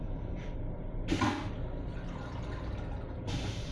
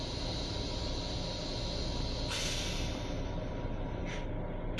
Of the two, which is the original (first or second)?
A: second